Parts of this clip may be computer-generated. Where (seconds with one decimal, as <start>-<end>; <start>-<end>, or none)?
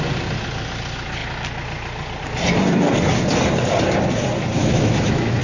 4.6-5.4